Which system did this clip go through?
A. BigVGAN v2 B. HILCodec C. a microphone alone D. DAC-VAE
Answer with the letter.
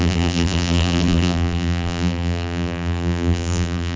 A